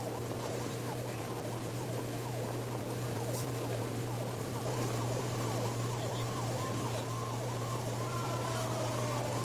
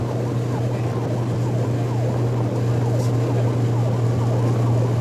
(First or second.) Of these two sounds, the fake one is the first